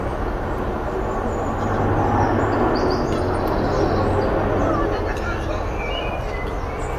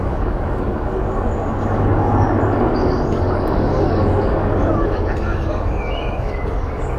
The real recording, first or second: first